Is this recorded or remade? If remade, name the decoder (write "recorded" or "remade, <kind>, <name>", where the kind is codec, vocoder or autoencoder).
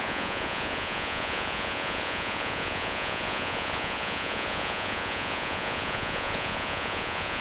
remade, vocoder, Vocos